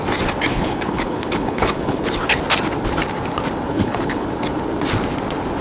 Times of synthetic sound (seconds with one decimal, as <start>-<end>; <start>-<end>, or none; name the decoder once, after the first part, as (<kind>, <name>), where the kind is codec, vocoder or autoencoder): 0.5-2.0 (codec, HILCodec); 3.7-4.3